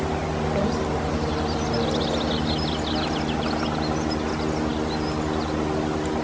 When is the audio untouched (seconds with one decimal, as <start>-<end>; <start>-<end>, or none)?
0.0-6.2